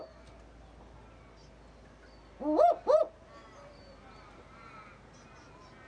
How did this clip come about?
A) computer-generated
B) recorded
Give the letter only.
B